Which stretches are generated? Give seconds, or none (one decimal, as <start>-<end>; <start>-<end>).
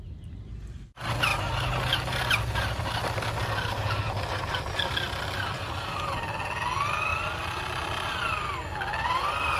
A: none